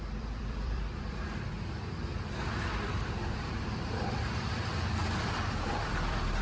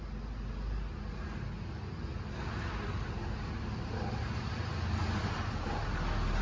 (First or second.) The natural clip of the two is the second